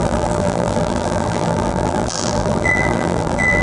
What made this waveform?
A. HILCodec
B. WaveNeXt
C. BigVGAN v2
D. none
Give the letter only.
C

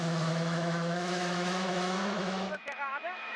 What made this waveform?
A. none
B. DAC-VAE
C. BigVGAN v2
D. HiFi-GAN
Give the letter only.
B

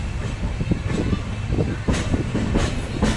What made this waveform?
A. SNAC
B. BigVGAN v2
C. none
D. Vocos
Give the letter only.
C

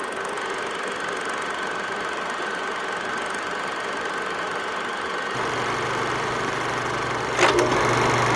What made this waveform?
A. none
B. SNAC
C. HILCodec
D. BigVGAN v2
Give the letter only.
A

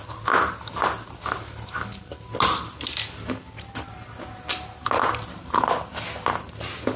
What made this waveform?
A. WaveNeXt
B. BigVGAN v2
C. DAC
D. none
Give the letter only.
D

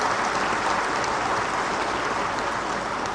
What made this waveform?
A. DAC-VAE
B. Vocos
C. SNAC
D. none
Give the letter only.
D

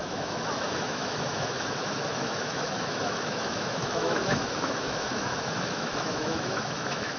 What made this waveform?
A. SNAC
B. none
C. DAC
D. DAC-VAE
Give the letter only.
D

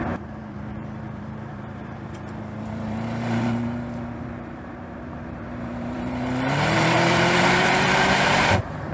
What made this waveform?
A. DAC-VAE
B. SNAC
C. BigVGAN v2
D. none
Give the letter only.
C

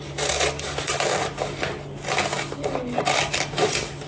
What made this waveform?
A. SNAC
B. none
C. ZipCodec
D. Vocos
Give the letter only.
B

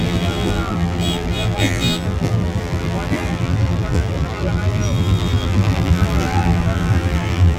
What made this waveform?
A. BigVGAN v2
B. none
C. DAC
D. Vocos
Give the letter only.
A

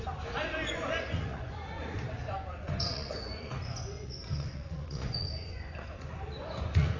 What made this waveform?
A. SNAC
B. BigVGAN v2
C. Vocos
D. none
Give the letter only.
C